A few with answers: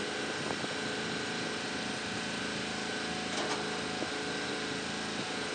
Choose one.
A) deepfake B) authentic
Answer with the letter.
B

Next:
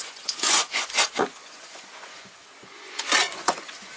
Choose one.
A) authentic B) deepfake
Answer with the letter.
B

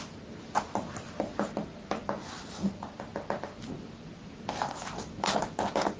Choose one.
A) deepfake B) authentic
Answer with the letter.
B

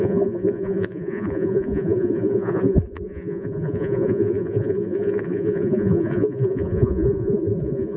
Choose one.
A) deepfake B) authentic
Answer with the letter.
A